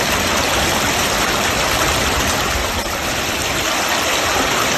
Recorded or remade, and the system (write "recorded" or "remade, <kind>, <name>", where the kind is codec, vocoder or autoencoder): recorded